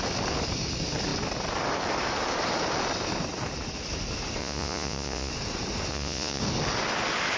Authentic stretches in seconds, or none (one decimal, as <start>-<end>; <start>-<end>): 0.0-4.4; 5.3-5.9; 6.4-7.4